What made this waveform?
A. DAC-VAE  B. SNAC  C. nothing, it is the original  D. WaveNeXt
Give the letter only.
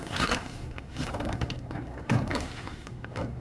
B